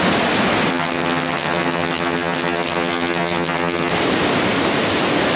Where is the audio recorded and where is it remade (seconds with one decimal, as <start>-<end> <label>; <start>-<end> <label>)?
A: 0.0-0.7 recorded; 0.7-3.9 remade; 3.9-5.4 recorded